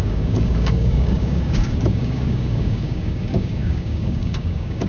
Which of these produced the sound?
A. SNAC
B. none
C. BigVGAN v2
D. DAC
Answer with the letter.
D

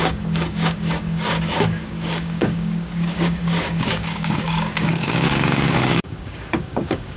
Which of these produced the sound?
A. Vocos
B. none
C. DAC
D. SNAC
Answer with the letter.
C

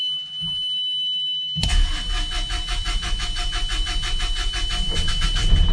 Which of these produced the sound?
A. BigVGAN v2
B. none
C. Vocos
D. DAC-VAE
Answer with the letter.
B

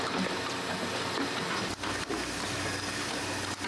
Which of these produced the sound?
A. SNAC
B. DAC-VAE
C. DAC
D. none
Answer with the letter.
D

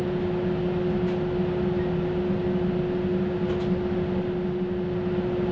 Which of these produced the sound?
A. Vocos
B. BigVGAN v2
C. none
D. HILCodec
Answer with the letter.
C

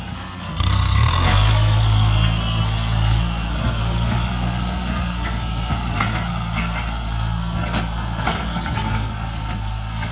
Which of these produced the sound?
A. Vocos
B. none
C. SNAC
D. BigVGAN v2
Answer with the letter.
C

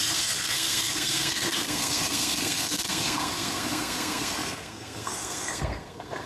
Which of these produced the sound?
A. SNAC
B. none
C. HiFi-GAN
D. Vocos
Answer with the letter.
A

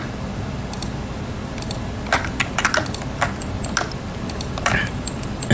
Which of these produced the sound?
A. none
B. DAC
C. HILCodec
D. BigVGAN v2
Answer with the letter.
A